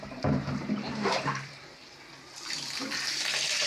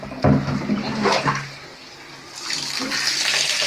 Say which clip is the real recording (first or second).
second